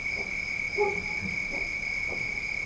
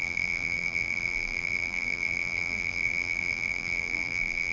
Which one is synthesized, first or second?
second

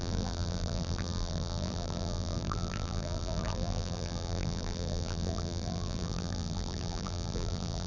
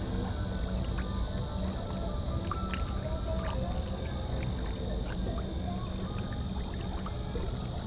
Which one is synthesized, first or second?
first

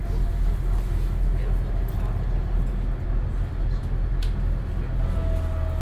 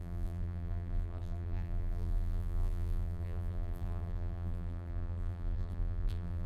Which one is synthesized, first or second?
second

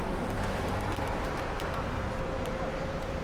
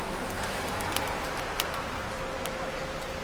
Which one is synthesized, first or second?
first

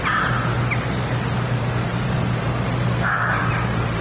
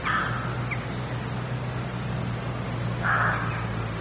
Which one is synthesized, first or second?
first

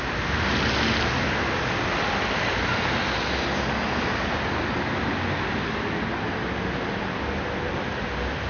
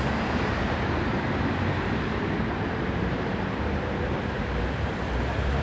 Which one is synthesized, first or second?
second